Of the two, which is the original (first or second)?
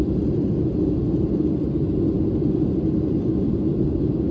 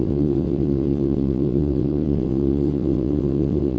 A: first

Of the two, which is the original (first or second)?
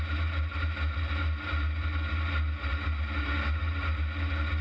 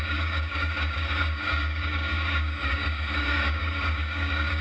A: first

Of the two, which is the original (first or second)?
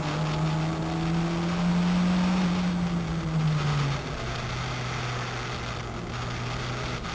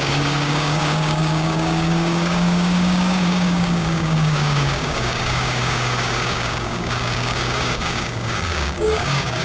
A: first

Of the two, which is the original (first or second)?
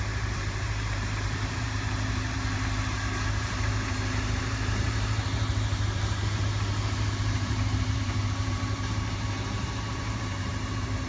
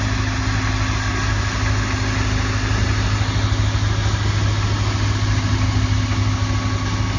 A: second